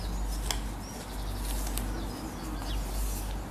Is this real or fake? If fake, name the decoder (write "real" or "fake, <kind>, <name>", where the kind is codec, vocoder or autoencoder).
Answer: real